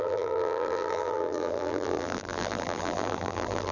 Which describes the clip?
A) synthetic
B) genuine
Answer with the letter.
A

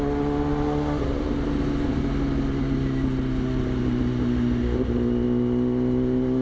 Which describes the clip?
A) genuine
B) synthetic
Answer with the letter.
A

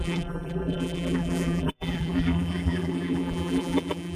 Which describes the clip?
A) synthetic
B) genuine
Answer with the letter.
A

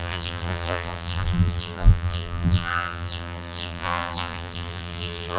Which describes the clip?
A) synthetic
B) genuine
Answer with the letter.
A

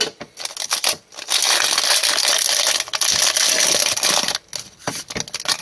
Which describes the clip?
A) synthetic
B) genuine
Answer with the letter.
B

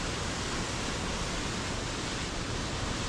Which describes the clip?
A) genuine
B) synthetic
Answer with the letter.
A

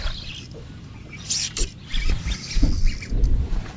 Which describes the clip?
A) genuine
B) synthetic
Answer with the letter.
A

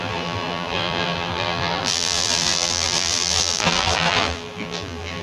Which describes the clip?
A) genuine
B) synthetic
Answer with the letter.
B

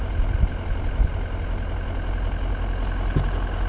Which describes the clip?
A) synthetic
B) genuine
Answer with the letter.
B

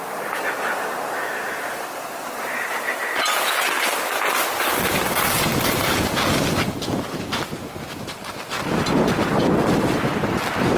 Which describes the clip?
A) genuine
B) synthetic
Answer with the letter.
A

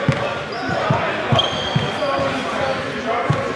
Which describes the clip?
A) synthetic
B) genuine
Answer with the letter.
B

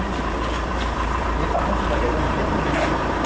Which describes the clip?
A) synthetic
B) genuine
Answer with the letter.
A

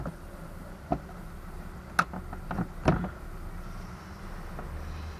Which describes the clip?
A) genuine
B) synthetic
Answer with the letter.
A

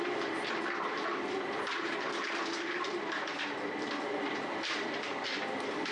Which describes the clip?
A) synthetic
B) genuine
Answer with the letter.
A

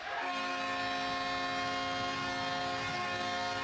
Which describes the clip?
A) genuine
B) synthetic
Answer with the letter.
A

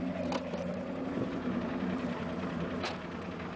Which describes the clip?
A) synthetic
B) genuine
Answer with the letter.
A